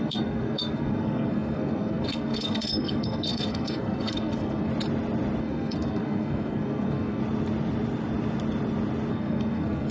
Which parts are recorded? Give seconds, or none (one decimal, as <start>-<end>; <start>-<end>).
4.7-5.4; 7.2-9.1